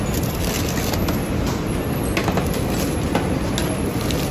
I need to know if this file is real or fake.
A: real